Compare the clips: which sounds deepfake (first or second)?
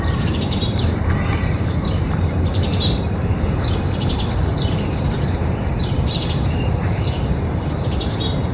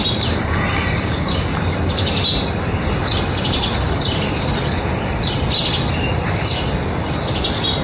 first